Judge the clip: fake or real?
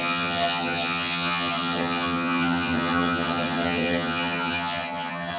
fake